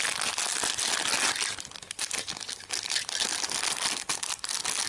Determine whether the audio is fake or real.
real